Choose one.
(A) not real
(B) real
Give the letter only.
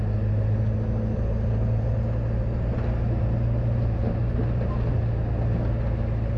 B